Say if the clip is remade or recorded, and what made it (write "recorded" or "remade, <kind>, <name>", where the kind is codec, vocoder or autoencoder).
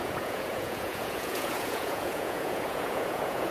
remade, vocoder, Vocos